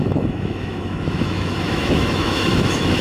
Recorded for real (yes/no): no